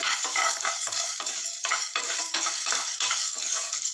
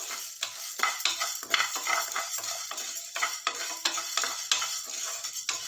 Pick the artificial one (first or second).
first